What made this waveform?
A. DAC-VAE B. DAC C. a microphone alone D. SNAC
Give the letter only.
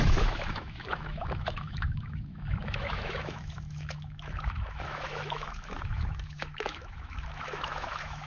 A